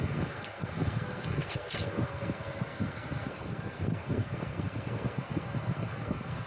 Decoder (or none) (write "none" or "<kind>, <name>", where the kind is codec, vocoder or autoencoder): codec, SNAC